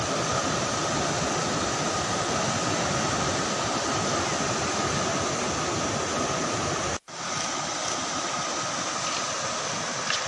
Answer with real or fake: real